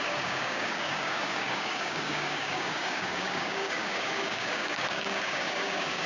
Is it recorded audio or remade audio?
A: remade